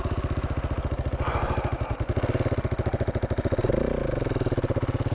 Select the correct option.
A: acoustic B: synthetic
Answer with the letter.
A